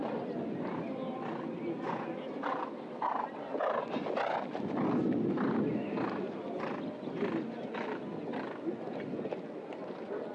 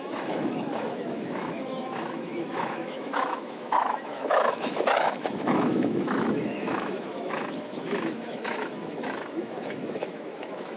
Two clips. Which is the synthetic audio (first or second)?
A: second